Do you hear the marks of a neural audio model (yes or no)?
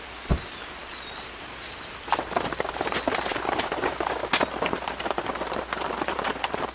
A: no